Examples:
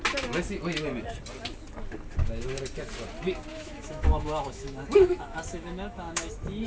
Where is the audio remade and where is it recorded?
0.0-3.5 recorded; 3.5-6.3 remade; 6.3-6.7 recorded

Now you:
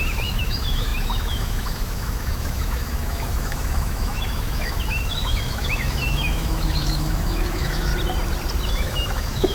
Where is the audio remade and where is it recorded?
0.0-7.9 remade; 7.9-8.7 recorded; 8.7-9.5 remade

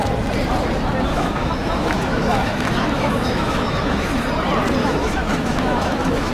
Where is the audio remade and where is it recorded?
0.0-1.1 recorded; 1.1-4.3 remade; 4.3-4.8 recorded; 4.8-6.3 remade

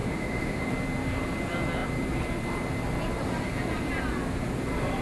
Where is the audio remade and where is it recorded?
0.0-0.7 remade; 0.7-5.0 recorded

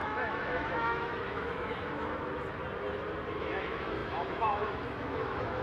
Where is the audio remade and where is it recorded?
0.0-2.6 remade; 2.6-3.4 recorded; 3.4-5.6 remade